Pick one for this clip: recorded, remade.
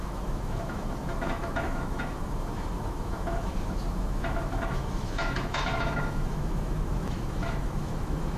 remade